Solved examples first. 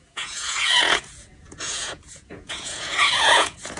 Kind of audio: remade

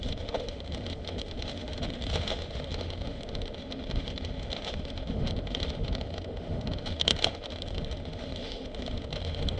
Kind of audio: remade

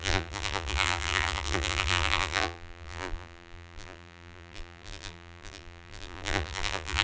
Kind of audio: remade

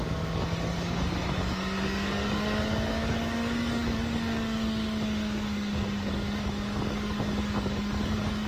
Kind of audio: remade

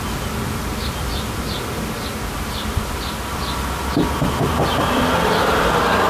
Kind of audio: recorded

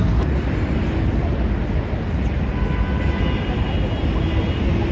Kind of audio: recorded